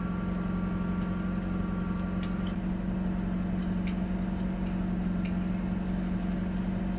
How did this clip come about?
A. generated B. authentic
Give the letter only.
B